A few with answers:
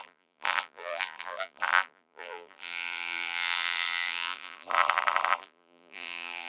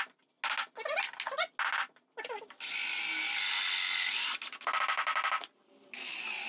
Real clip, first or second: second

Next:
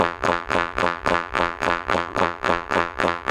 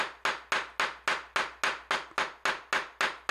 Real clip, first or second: second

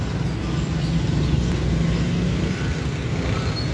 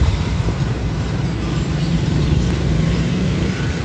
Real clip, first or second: first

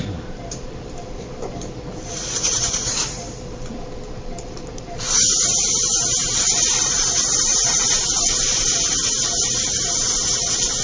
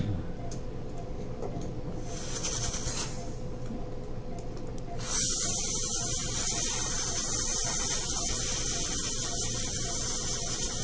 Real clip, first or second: second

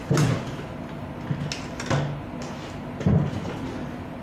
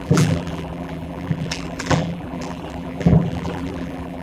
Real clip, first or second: first